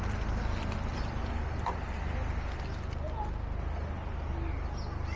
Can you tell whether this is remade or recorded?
recorded